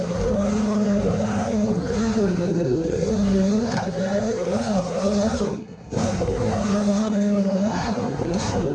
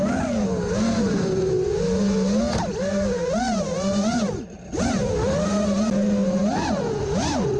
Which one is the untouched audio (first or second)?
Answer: second